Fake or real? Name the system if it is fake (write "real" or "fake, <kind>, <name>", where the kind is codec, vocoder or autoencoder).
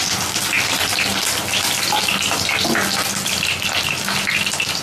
real